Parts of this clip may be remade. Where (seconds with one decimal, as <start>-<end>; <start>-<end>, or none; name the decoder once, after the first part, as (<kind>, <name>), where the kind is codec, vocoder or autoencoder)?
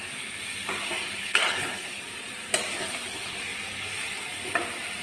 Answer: 1.2-1.9 (codec, HILCodec)